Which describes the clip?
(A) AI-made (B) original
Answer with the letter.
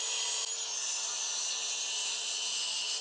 B